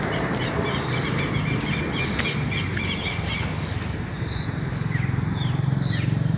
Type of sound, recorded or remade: remade